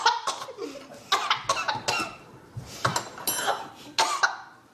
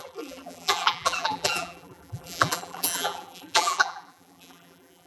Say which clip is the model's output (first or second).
second